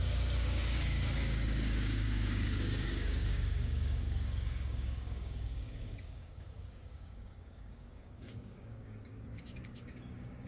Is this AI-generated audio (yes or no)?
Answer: yes